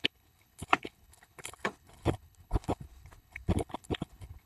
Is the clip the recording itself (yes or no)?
no